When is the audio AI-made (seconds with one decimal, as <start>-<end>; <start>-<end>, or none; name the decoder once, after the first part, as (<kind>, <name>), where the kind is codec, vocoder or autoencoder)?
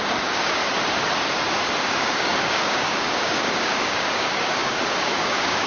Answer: 0.0-0.6 (codec, DAC); 1.8-5.7